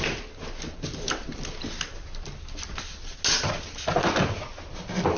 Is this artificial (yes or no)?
no